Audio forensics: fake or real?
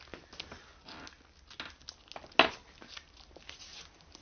real